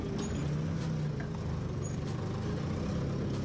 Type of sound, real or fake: real